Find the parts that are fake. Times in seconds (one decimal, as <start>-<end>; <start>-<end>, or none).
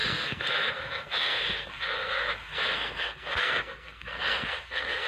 0.0-5.1